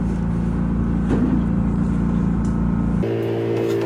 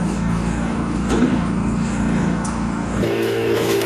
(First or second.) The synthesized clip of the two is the second